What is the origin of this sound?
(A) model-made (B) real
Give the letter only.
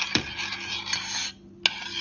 B